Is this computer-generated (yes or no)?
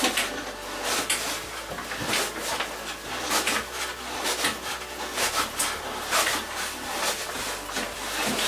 no